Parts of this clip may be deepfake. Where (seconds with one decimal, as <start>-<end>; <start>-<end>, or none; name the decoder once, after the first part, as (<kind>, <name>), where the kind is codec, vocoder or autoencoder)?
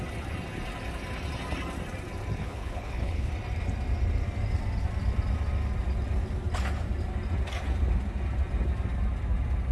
2.4-3.3 (codec, HILCodec)